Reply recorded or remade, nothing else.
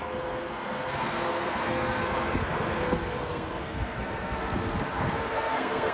remade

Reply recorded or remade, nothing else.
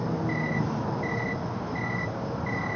recorded